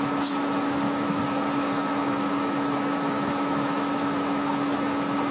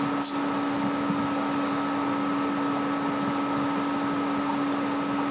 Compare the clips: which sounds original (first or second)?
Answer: second